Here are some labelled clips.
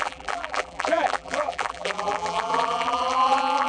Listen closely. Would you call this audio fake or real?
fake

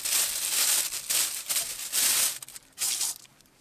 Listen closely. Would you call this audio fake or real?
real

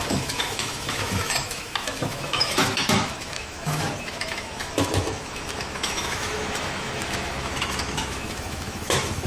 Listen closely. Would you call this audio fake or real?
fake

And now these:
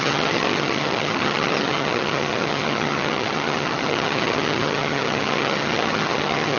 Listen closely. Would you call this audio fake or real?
fake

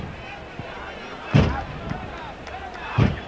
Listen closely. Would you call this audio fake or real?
real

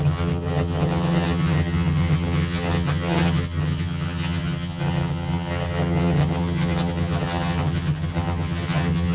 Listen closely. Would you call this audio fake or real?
fake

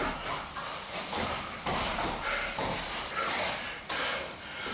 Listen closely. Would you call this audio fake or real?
real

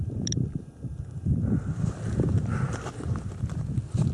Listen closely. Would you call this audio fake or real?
fake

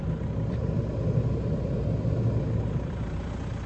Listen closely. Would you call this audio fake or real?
real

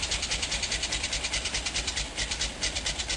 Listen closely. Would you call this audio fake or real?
real